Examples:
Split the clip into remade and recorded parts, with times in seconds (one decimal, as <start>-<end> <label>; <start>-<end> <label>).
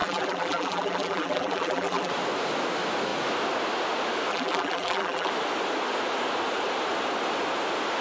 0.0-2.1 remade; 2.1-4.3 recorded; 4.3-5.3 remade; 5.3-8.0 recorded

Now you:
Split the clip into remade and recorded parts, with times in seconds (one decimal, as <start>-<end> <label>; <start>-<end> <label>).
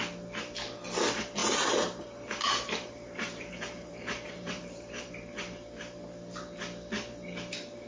0.0-1.4 recorded; 1.4-5.1 remade; 5.1-7.9 recorded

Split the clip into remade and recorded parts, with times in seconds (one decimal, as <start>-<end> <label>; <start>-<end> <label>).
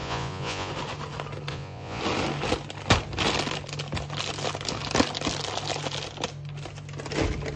0.0-0.7 remade; 0.7-1.5 recorded; 1.5-2.0 remade; 2.0-7.6 recorded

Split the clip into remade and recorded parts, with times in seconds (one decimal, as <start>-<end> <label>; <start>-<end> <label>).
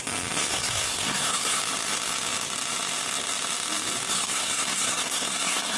0.0-0.5 recorded; 0.5-1.6 remade; 1.6-4.1 recorded; 4.1-5.8 remade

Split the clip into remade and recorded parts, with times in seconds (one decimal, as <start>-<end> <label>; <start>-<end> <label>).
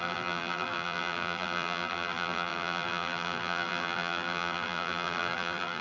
0.0-5.8 remade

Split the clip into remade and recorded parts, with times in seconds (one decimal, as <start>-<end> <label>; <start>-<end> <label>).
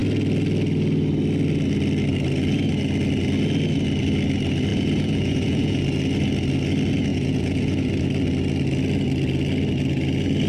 0.0-4.7 recorded; 4.7-5.8 remade; 5.8-7.1 recorded; 7.1-7.9 remade; 7.9-10.5 recorded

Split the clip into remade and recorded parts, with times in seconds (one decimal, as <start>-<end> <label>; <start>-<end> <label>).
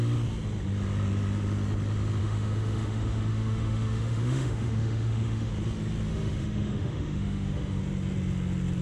0.0-2.2 recorded; 2.2-5.5 remade; 5.5-6.1 recorded; 6.1-7.8 remade; 7.8-8.8 recorded